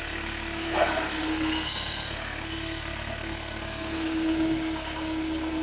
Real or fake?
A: fake